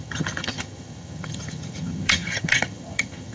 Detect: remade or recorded remade